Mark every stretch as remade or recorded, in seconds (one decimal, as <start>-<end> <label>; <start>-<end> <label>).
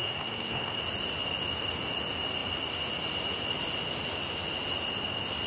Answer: 0.0-0.8 remade; 0.8-5.5 recorded